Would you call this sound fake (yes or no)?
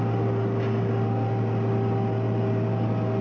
no